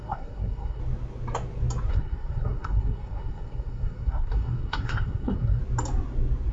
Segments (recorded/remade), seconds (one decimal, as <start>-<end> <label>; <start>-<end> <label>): 0.0-0.8 remade; 0.8-1.9 recorded; 1.9-5.6 remade; 5.6-6.5 recorded